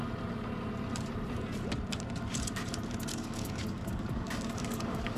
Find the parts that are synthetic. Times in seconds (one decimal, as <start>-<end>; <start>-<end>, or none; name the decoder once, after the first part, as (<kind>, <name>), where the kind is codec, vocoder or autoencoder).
3.1-5.2 (codec, DAC)